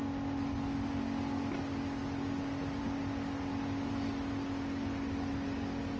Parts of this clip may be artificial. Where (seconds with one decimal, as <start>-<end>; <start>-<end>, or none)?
none